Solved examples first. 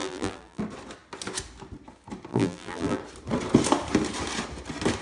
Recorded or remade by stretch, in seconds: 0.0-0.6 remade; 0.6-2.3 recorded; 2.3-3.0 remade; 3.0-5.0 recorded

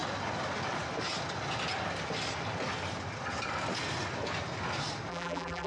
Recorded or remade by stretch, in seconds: 0.0-5.1 recorded; 5.1-5.7 remade

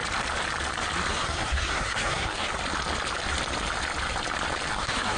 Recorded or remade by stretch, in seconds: 0.0-1.1 recorded; 1.1-2.5 remade; 2.5-4.7 recorded; 4.7-5.2 remade

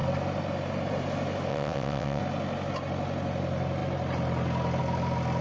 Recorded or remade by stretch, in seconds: 0.0-1.5 recorded; 1.5-2.2 remade; 2.2-5.4 recorded

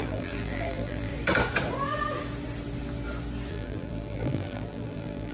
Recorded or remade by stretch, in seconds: 0.0-1.1 remade; 1.1-3.5 recorded; 3.5-5.3 remade